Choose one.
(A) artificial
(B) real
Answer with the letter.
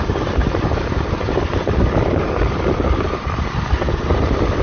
B